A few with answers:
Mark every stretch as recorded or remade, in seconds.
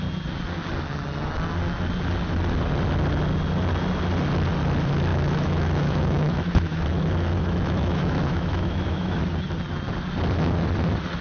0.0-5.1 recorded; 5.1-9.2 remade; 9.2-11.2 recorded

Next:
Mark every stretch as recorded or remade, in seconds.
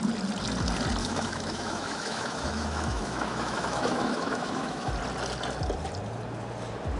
0.0-1.0 recorded; 1.0-4.9 remade; 4.9-7.0 recorded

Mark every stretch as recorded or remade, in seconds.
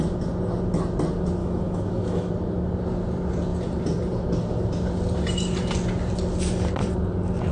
0.0-1.4 recorded; 1.4-2.3 remade; 2.3-7.5 recorded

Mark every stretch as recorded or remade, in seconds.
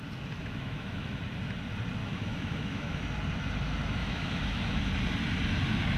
0.0-0.4 recorded; 0.4-1.2 remade; 1.2-2.0 recorded; 2.0-3.0 remade; 3.0-4.0 recorded; 4.0-4.8 remade; 4.8-6.0 recorded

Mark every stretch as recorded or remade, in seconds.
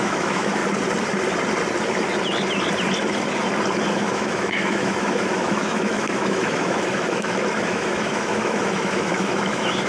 0.0-0.6 remade; 0.6-3.9 recorded; 3.9-9.9 remade